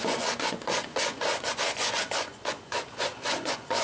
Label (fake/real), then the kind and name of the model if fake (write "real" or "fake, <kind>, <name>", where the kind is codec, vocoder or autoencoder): fake, vocoder, Vocos